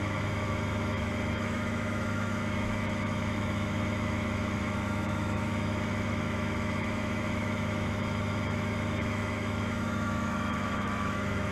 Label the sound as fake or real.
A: fake